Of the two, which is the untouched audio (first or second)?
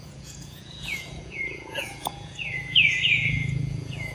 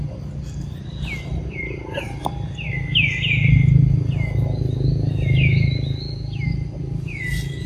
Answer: second